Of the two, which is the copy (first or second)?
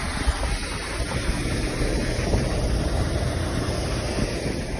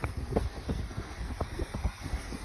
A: second